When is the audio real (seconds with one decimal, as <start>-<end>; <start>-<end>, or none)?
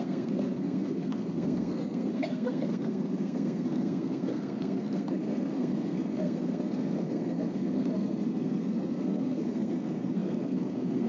none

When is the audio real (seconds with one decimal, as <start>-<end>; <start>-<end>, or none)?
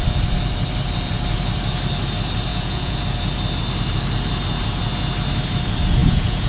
0.0-2.5; 3.0-6.0